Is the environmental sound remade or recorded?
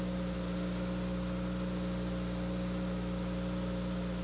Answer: recorded